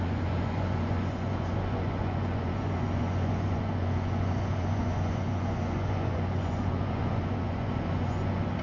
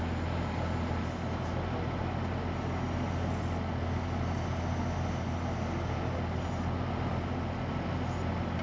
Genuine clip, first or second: second